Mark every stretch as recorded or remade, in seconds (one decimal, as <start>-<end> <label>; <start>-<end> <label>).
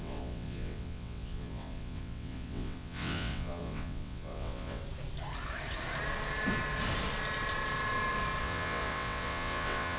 0.0-4.8 remade; 4.8-8.4 recorded; 8.4-10.0 remade